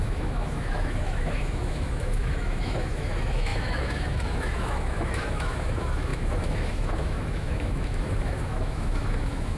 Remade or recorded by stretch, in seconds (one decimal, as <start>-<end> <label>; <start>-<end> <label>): 0.0-9.6 remade